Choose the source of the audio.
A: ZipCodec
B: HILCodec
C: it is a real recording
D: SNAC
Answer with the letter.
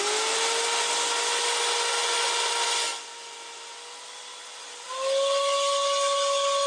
C